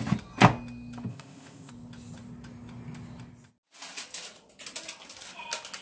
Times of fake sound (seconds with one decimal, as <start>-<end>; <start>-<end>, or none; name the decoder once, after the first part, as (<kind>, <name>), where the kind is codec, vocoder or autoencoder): 1.1-1.7 (codec, ZipCodec)